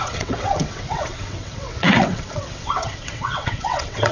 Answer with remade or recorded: remade